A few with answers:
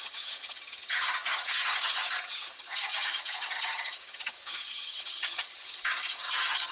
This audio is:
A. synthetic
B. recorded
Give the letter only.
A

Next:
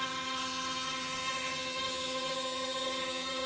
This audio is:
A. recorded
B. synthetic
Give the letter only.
B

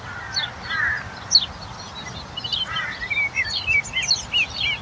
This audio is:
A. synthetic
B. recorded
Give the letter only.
B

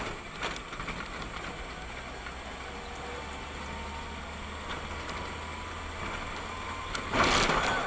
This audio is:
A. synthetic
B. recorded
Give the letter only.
B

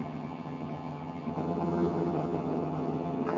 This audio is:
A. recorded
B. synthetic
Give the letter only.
B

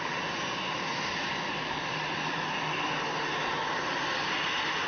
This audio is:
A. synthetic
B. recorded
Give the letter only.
B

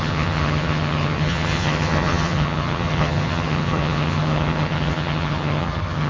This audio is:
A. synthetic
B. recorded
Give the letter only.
A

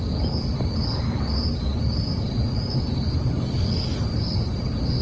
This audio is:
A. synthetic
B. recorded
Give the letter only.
B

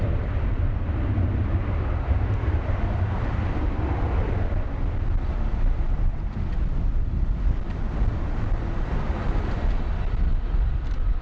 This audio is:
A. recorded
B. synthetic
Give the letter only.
A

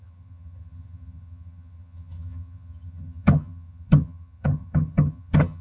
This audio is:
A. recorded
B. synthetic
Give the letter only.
B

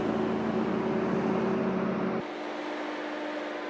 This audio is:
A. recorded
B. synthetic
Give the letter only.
A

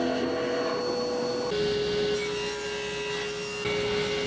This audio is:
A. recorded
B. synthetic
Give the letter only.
A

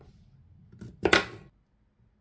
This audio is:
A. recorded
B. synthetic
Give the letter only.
A